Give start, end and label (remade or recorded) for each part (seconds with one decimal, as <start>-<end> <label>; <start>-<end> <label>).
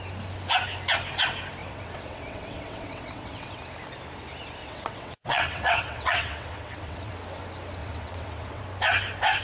0.0-1.6 recorded; 1.6-3.6 remade; 3.6-4.6 recorded; 4.6-7.1 remade; 7.1-7.8 recorded; 7.8-8.6 remade; 8.6-9.4 recorded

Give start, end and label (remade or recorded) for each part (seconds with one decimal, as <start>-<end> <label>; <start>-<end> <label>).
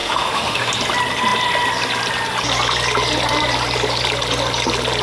0.0-0.7 remade; 0.7-5.0 recorded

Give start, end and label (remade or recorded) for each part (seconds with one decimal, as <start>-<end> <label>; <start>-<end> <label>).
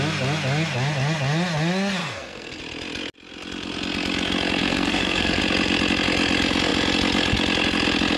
0.0-2.0 recorded; 2.0-2.6 remade; 2.6-4.6 recorded; 4.6-5.4 remade; 5.4-8.2 recorded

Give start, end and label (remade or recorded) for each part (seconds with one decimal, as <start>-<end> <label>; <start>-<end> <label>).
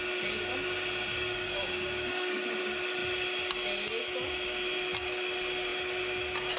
0.0-1.1 recorded; 1.1-2.6 remade; 2.6-6.6 recorded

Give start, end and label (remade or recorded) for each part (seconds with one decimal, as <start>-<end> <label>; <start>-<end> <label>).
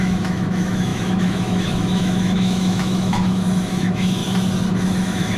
0.0-4.2 remade; 4.2-4.8 recorded; 4.8-5.4 remade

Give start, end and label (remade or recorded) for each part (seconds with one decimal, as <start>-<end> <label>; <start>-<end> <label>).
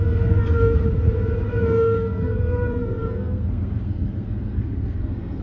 0.0-0.8 remade; 0.8-1.5 recorded; 1.5-5.4 remade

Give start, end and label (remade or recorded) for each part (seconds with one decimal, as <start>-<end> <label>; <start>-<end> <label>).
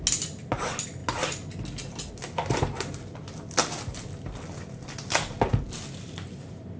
0.0-6.8 recorded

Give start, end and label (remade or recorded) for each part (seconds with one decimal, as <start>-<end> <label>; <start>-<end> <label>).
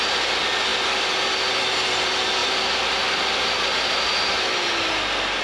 0.0-2.4 recorded; 2.4-3.9 remade; 3.9-5.4 recorded